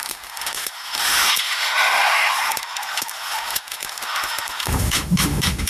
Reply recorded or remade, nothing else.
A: remade